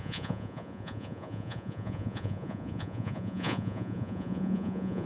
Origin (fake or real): fake